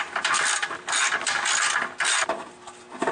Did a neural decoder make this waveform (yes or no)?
no